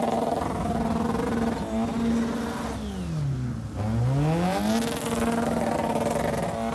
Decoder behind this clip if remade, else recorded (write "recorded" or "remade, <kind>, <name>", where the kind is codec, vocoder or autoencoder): recorded